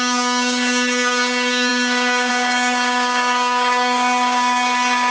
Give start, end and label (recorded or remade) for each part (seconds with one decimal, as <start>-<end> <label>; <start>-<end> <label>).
0.0-5.1 remade